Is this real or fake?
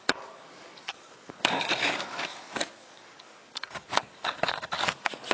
fake